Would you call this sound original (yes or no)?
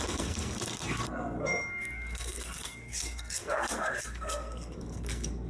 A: no